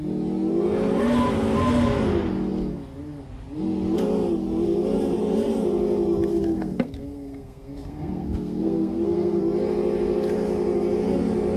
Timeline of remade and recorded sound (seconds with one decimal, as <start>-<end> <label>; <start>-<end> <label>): 0.0-6.3 recorded; 6.3-9.4 remade; 9.4-11.6 recorded